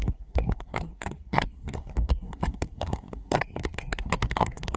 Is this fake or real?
fake